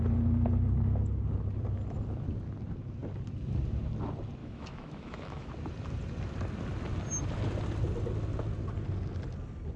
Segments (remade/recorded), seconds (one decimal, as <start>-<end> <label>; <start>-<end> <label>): 0.0-4.4 recorded; 4.4-5.5 remade; 5.5-9.8 recorded